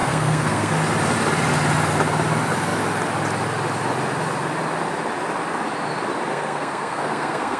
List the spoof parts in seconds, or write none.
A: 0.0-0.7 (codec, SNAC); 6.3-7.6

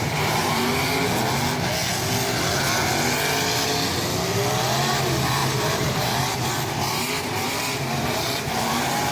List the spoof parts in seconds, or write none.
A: 0.0-0.7 (vocoder, BigVGAN v2); 5.4-8.4

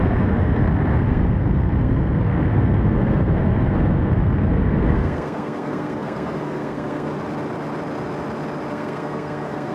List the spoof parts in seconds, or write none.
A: 0.0-7.1 (codec, SNAC); 8.7-9.7